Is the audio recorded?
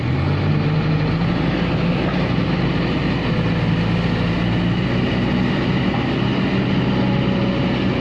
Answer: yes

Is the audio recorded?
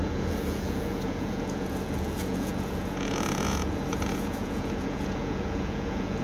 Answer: no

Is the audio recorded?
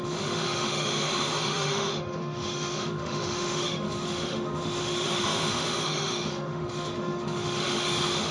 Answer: no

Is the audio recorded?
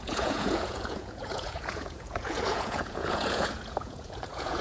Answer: no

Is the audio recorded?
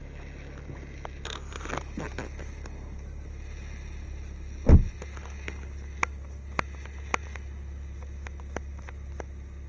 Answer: yes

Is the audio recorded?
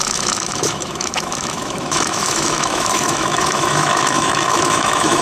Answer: no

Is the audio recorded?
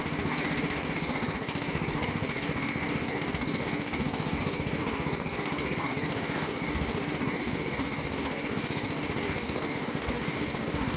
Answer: no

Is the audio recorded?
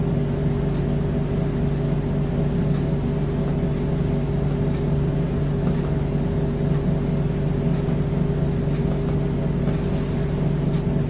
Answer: yes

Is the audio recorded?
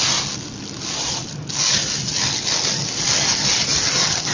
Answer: yes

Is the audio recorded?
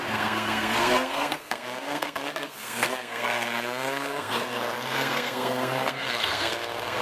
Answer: no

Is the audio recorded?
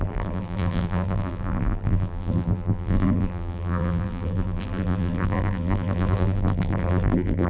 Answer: no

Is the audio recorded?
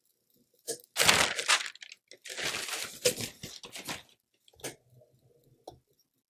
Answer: yes